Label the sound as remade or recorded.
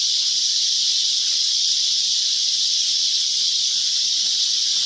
remade